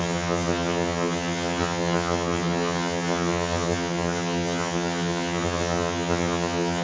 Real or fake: fake